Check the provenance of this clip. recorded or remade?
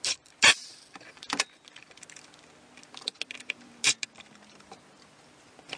recorded